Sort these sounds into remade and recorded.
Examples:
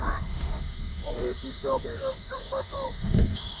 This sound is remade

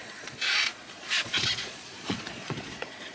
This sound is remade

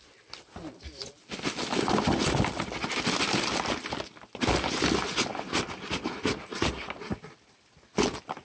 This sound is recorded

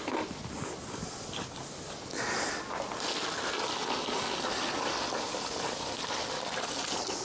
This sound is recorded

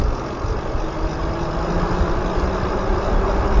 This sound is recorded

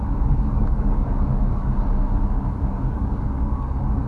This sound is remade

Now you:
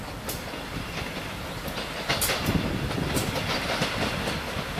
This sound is recorded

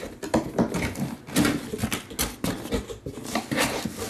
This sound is recorded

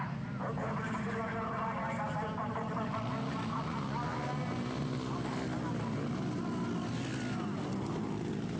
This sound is recorded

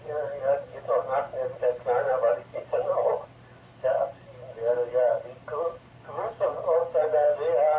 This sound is recorded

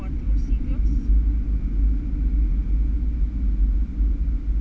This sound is recorded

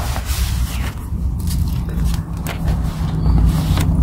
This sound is recorded